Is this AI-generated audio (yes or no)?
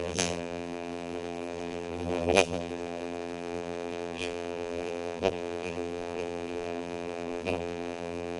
yes